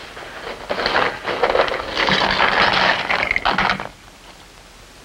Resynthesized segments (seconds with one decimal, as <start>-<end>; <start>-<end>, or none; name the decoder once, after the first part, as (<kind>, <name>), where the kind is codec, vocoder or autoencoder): none